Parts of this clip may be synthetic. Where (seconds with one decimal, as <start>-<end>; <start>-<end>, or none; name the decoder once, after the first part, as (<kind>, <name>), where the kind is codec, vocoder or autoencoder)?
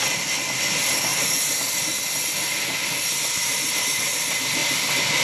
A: none